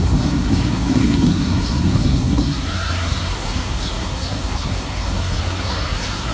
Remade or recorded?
remade